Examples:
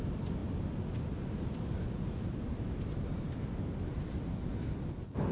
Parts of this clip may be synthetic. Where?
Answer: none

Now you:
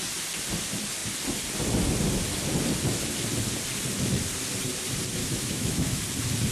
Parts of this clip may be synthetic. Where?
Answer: 5.2-6.0

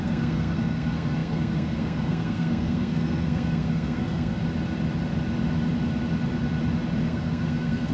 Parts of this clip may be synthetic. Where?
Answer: 0.0-4.4; 7.0-7.9

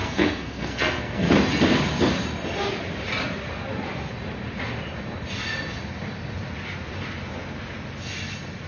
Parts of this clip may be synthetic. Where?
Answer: 0.0-1.3

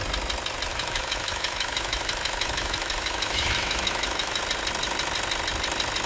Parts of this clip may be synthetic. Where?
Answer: 0.7-4.4